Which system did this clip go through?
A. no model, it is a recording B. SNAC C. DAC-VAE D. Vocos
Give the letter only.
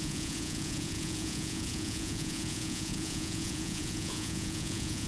D